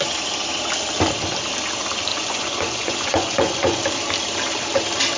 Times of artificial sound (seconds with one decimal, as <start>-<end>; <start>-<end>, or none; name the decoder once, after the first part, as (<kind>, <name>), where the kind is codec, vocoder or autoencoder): 2.1-3.8 (vocoder, Vocos)